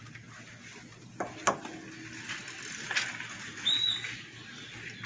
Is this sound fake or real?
real